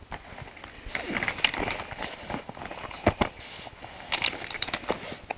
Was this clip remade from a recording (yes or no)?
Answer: no